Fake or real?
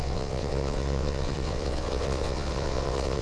fake